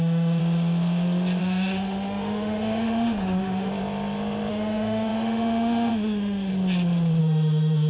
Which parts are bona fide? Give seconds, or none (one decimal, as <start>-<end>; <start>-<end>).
0.4-1.4; 3.7-4.5; 6.5-7.2

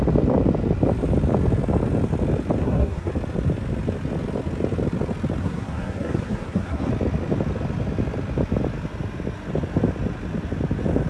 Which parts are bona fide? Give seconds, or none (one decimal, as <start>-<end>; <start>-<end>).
0.0-2.6; 3.1-5.4; 6.9-11.1

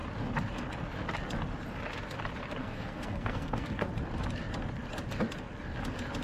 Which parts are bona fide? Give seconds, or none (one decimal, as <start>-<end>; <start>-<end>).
0.0-2.6; 3.9-6.2

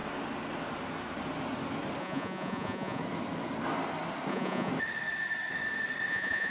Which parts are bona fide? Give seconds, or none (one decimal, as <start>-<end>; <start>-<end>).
0.0-2.0; 3.0-4.3; 4.7-6.1

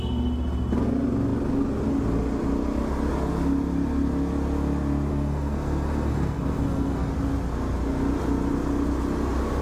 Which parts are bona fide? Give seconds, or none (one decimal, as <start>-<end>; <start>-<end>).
0.0-5.1; 7.1-9.6

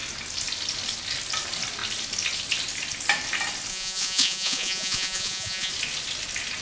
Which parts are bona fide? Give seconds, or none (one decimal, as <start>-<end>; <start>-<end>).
0.0-3.7; 5.7-6.6

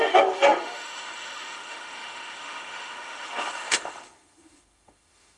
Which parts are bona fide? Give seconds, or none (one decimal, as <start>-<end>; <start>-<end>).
none